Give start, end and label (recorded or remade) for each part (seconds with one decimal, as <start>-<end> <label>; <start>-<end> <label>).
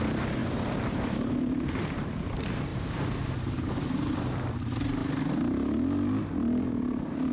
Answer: 0.0-0.4 recorded; 0.4-2.1 remade; 2.1-2.7 recorded; 2.7-3.8 remade; 3.8-7.3 recorded